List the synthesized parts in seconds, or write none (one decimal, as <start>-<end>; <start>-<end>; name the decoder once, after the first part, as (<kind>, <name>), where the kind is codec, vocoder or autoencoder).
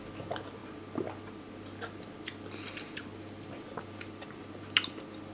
none